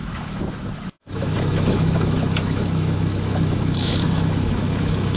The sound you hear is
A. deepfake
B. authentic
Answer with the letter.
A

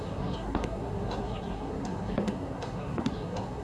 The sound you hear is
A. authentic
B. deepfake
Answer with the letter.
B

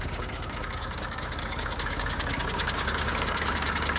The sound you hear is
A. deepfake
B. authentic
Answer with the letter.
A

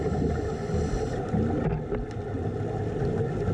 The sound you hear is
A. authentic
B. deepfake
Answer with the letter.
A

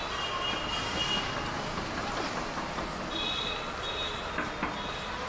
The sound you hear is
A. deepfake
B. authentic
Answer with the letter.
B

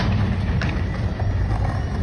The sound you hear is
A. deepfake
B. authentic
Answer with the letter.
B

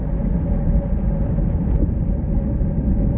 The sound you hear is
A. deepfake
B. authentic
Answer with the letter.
B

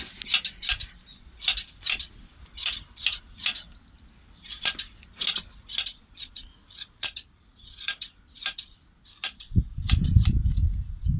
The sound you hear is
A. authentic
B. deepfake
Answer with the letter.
A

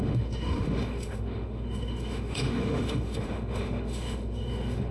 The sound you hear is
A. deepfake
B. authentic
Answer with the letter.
A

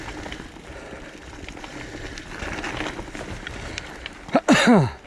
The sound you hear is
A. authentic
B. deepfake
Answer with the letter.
A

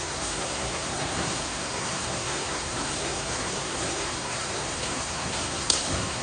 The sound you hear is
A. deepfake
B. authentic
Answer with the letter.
A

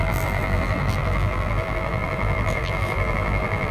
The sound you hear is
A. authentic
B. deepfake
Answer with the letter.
B